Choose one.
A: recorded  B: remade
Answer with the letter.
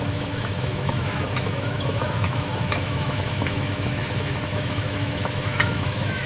B